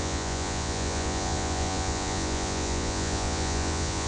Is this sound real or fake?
fake